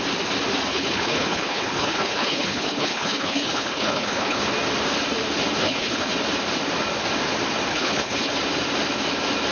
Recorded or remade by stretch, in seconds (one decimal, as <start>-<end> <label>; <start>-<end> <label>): 0.0-0.7 recorded; 0.7-4.5 remade; 4.5-5.6 recorded; 5.6-6.1 remade; 6.1-7.7 recorded; 7.7-8.3 remade; 8.3-9.5 recorded